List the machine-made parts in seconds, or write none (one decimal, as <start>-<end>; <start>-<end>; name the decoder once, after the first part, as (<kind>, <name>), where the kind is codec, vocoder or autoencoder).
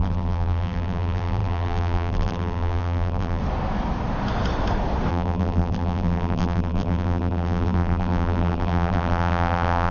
0.0-3.4 (vocoder, BigVGAN v2); 5.1-9.9